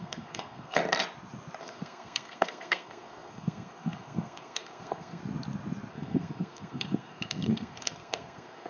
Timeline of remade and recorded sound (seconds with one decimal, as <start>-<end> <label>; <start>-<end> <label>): 0.0-0.8 remade; 0.8-1.6 recorded; 1.6-5.2 remade; 5.2-5.9 recorded; 5.9-8.7 remade